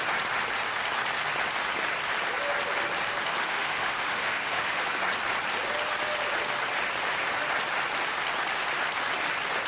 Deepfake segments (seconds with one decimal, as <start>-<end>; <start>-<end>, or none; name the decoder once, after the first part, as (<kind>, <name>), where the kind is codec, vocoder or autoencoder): 3.4-4.8 (autoencoder, DAC-VAE)